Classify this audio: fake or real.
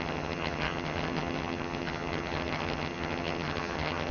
fake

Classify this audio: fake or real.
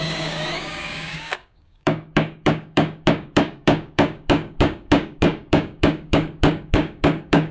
fake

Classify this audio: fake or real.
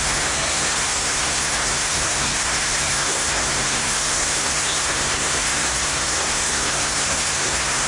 fake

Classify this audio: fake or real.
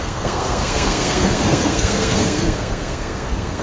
fake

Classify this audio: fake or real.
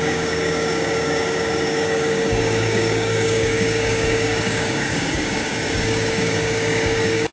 fake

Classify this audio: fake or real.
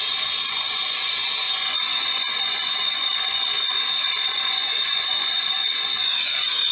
fake